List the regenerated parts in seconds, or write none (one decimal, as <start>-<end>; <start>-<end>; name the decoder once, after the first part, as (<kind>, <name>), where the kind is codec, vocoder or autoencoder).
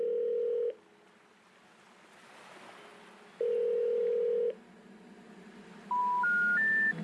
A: none